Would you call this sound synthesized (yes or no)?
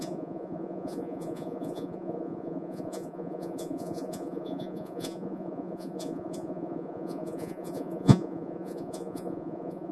yes